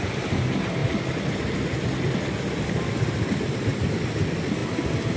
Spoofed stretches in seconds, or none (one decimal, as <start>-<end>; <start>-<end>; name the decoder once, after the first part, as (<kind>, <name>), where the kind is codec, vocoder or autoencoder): none